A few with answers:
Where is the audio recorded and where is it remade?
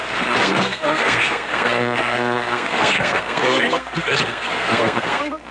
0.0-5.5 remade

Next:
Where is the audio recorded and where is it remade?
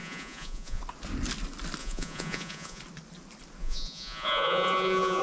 0.0-0.8 remade; 0.8-1.8 recorded; 1.8-2.8 remade; 2.8-3.6 recorded; 3.6-5.2 remade